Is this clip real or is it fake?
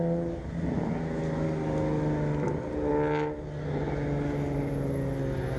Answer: real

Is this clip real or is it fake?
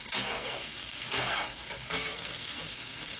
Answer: fake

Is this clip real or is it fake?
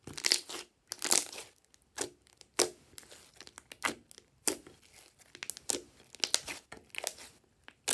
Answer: real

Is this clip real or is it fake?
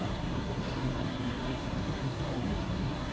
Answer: fake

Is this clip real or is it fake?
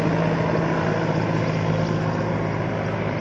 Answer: real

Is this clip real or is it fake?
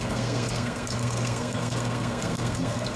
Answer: fake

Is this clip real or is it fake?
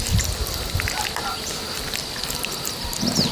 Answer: real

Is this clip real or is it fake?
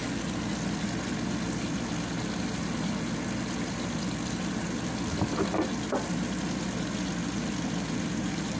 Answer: real